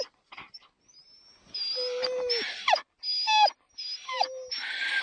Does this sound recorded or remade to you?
recorded